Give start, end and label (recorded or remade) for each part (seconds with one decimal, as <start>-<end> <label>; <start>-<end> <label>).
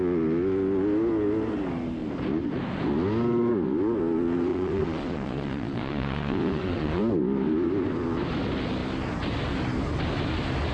0.0-4.5 recorded; 4.5-7.0 remade; 7.0-10.7 recorded